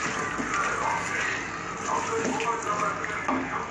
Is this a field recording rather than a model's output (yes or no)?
yes